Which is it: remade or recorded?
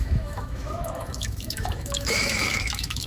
remade